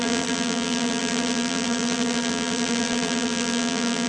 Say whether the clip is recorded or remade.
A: remade